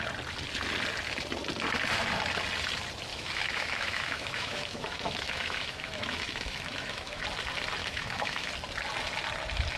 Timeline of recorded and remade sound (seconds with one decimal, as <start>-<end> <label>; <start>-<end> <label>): 0.0-3.1 recorded; 3.1-7.2 remade; 7.2-7.8 recorded; 7.8-8.5 remade; 8.5-9.8 recorded